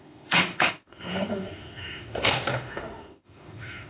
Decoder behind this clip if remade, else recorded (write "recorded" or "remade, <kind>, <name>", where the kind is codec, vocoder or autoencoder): remade, autoencoder, DAC-VAE